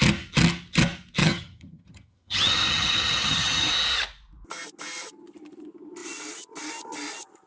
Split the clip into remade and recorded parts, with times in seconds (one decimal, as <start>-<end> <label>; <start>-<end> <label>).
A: 0.0-1.2 recorded; 1.2-3.7 remade; 3.7-7.5 recorded